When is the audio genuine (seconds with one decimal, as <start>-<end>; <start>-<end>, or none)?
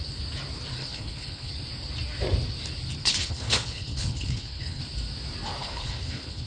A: 0.0-0.8; 1.5-3.0; 4.8-5.6